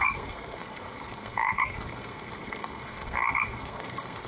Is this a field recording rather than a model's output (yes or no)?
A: no